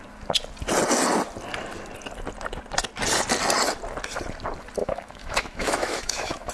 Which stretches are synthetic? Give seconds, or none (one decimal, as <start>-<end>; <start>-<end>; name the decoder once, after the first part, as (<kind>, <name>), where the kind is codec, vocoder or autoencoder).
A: 4.8-6.5 (autoencoder, DAC-VAE)